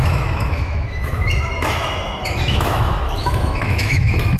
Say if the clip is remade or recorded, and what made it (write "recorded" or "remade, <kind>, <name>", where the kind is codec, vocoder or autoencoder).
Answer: remade, autoencoder, DAC-VAE